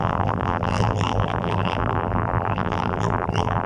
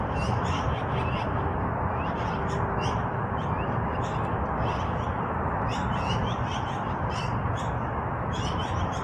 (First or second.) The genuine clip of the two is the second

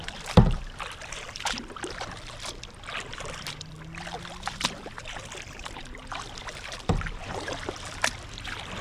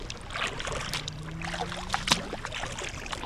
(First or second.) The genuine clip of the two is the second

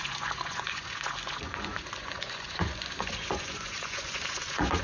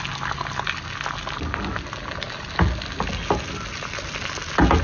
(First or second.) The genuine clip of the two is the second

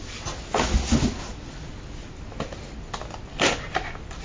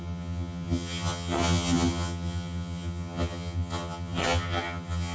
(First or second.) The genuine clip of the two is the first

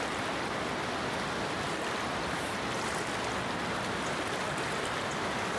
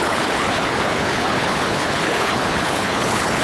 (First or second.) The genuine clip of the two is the first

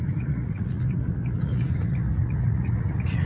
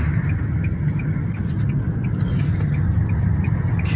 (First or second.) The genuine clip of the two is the second